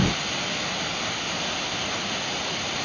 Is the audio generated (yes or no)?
no